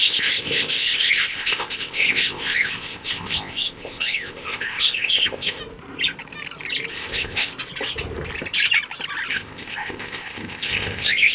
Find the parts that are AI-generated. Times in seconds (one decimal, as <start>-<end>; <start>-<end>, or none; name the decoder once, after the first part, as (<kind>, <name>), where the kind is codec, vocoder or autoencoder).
0.0-5.6 (codec, ZipCodec); 6.9-7.5; 9.3-11.3